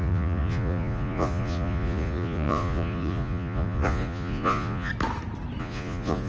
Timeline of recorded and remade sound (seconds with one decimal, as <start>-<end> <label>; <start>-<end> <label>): 0.0-4.9 remade; 4.9-5.6 recorded; 5.6-6.3 remade